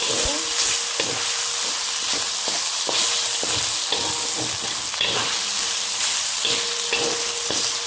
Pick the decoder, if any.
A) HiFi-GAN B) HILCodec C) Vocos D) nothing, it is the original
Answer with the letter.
D